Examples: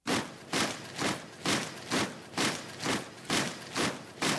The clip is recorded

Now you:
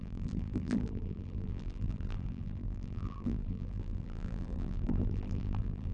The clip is remade